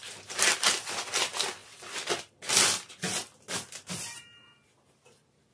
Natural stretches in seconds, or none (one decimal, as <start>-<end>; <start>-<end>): 0.0-5.5

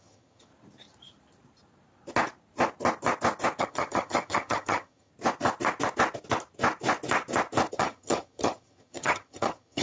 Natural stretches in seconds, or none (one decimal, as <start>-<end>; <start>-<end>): 0.5-3.6; 5.1-7.7

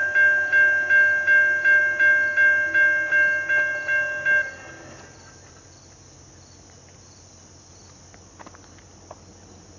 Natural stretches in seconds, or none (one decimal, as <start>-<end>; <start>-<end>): 0.0-9.8

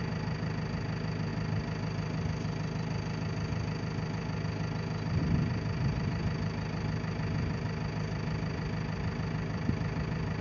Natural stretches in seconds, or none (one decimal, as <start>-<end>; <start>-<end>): 0.0-10.4

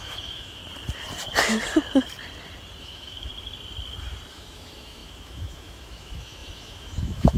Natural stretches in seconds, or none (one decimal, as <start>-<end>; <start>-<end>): 0.6-2.8; 3.3-4.3

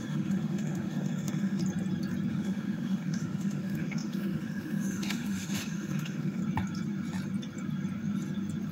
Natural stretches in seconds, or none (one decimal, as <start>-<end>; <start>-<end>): 1.6-2.3; 6.4-8.7

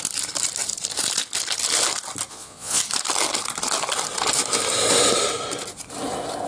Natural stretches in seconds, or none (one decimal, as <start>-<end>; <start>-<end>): 0.0-2.3; 2.8-6.5